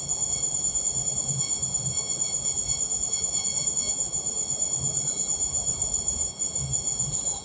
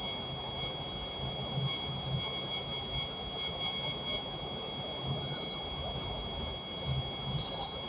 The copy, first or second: first